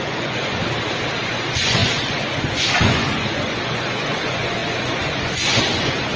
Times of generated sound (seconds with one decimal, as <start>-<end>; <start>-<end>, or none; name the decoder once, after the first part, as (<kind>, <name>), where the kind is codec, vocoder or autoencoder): 0.0-0.6 (vocoder, Vocos); 1.2-6.2